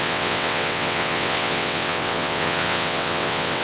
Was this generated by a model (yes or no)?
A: yes